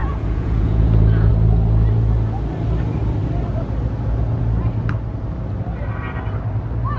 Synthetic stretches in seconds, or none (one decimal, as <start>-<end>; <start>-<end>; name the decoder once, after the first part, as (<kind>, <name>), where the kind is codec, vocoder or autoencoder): 0.0-1.3 (vocoder, Vocos)